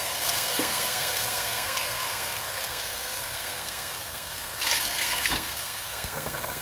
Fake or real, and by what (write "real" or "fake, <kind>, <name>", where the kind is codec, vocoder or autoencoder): fake, codec, SNAC